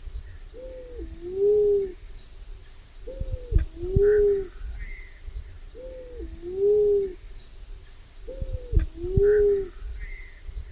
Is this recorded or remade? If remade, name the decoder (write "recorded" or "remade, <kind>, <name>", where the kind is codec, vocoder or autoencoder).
recorded